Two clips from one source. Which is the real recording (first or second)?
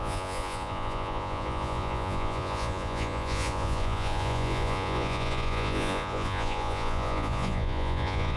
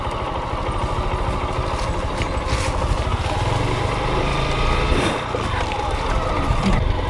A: second